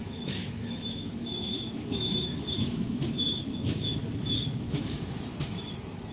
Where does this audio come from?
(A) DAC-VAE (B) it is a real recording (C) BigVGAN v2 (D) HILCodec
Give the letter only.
A